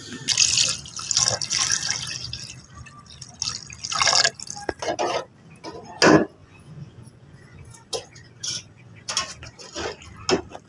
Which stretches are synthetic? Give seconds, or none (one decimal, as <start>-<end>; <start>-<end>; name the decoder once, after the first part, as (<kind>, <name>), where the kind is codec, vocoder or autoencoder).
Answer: 6.4-9.1 (vocoder, Vocos)